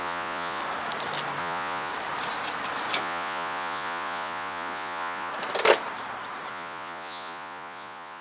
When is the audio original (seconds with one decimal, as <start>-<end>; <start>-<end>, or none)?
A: 0.6-1.4; 1.9-3.0; 5.3-6.5

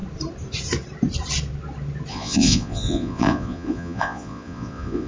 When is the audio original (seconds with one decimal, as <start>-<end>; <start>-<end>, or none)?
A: 0.0-2.1

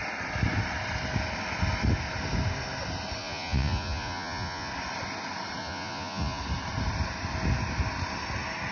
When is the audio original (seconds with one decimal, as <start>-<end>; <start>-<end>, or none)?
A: 0.0-3.2; 4.7-5.6; 6.4-8.7

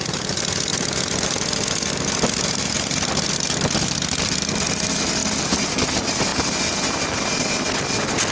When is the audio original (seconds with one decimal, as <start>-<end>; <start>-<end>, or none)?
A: 0.0-8.3

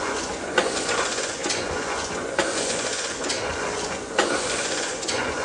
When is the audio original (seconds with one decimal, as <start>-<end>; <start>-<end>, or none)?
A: none

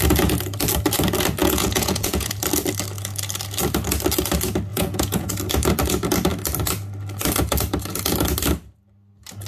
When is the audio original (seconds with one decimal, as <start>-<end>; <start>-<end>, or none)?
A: 0.0-1.4; 2.4-4.7; 5.3-9.5

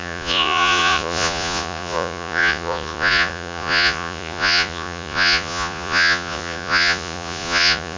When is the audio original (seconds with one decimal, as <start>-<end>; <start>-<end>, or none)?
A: none

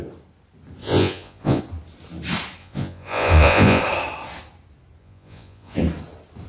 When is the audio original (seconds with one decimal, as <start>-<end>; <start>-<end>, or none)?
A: 0.0-0.8; 1.6-2.6; 3.8-5.0; 5.8-6.5